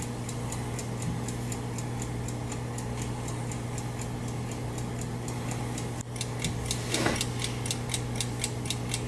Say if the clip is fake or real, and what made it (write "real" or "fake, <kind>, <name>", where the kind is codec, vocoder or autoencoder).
real